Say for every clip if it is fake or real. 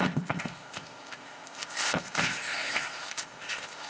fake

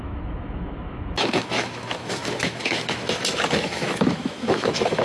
fake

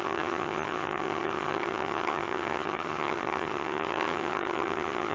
fake